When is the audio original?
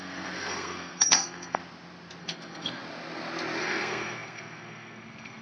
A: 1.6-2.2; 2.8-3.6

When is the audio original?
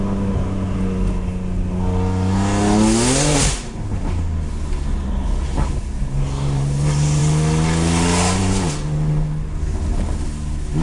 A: 0.0-10.8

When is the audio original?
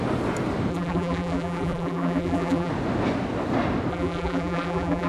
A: 0.0-0.7; 2.7-3.9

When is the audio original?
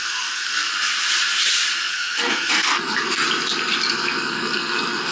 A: 0.7-1.9; 3.2-3.9